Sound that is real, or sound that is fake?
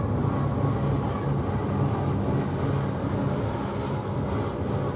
real